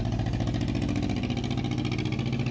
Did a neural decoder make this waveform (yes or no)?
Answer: no